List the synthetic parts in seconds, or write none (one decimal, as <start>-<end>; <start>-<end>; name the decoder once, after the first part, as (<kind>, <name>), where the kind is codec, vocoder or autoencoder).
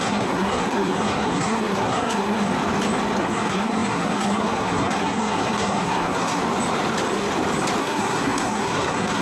0.0-2.5 (codec, SNAC); 3.2-6.4; 7.8-9.2